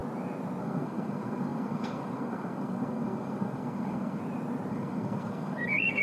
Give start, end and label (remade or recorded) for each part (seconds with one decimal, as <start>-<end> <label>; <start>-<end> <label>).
0.0-0.6 recorded; 0.6-4.2 remade; 4.2-4.7 recorded; 4.7-6.0 remade